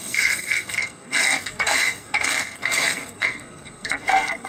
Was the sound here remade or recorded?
remade